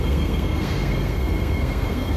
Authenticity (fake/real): fake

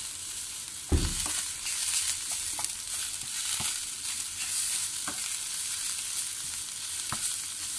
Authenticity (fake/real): real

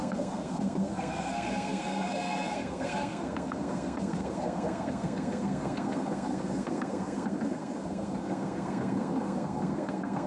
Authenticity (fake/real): fake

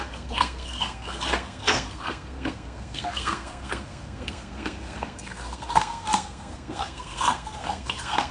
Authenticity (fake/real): fake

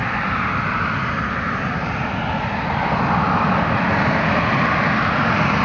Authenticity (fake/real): real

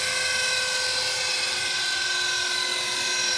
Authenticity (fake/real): real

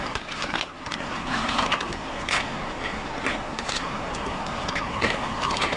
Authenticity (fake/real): fake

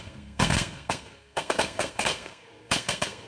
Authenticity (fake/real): fake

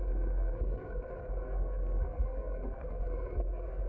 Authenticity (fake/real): fake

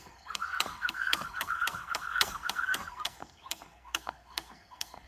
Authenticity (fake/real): fake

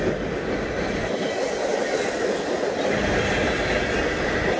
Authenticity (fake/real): real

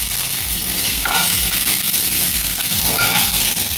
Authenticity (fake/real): fake